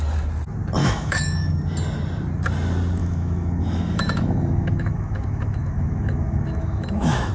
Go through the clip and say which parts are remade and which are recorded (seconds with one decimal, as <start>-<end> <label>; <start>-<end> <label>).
0.0-0.8 recorded; 0.8-1.5 remade; 1.5-3.0 recorded; 3.0-7.3 remade